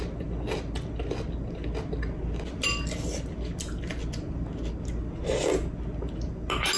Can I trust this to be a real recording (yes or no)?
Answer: yes